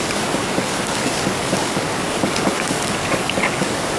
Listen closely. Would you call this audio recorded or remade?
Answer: remade